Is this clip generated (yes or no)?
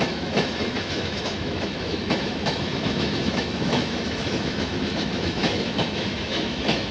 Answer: yes